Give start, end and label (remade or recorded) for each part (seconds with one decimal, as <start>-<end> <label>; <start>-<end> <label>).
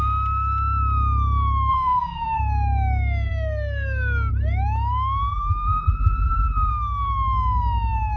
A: 0.0-1.7 recorded; 1.7-2.4 remade; 2.4-5.3 recorded; 5.3-6.7 remade; 6.7-8.2 recorded